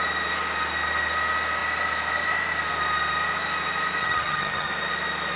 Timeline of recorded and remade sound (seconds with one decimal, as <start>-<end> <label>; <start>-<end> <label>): 0.0-4.0 recorded; 4.0-4.7 remade; 4.7-5.4 recorded